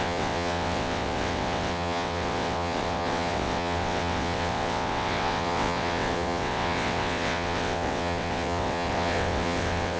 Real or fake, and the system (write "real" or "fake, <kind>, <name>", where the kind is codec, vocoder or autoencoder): fake, vocoder, WaveNeXt